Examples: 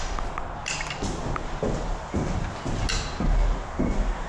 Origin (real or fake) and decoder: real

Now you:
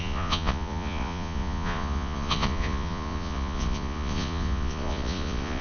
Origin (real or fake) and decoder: fake, vocoder, Vocos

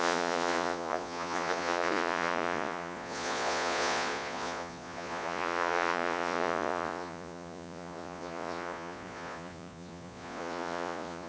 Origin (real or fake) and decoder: fake, vocoder, Vocos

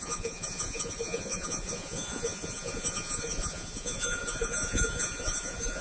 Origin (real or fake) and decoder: fake, vocoder, Vocos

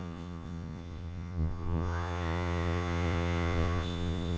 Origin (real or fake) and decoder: fake, vocoder, Vocos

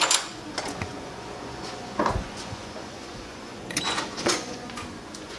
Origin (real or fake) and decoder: fake, vocoder, Vocos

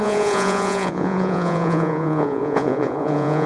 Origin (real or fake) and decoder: fake, vocoder, Vocos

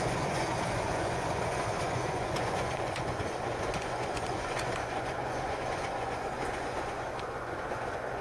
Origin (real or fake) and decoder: fake, vocoder, Vocos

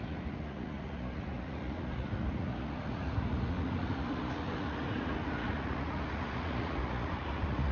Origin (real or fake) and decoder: fake, vocoder, Vocos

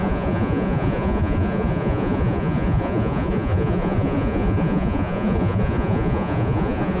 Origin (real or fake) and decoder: fake, vocoder, Vocos